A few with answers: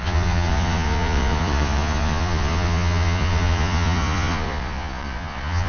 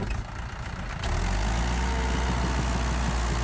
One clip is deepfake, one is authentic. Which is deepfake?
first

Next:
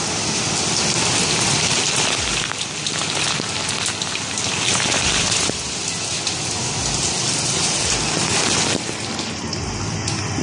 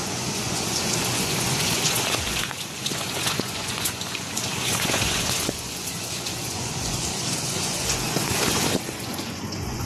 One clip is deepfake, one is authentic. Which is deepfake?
second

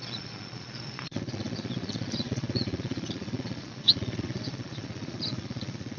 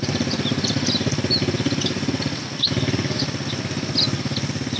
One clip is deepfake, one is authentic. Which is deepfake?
first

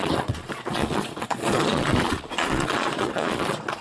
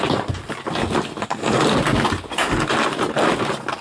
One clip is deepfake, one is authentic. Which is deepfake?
first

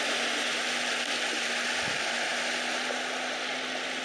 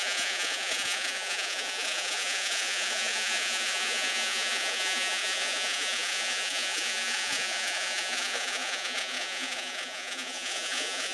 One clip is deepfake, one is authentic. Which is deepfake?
second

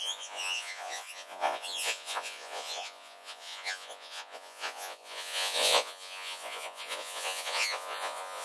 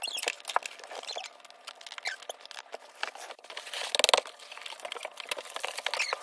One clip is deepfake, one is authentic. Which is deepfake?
first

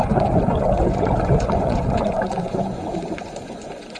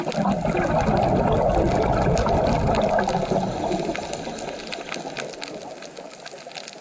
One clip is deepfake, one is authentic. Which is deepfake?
first